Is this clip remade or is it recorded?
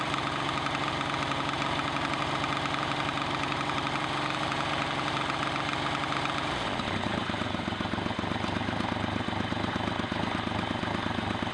recorded